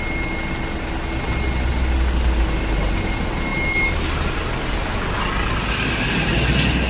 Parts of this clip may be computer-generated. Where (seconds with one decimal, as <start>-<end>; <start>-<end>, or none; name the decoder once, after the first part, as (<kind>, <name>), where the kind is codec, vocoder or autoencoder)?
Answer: none